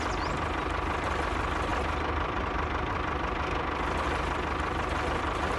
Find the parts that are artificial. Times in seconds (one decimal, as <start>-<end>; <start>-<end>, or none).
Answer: none